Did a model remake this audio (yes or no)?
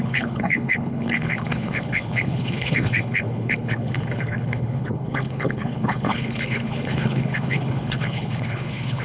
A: yes